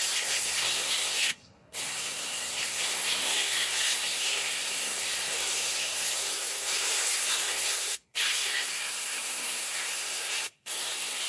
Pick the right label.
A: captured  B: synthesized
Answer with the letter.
B